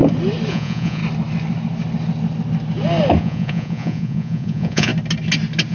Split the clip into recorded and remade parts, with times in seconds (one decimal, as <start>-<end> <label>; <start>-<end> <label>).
0.0-0.5 recorded; 0.5-1.0 remade; 1.0-3.2 recorded; 3.2-4.9 remade; 4.9-5.7 recorded